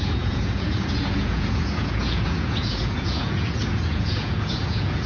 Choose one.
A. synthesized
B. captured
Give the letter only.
A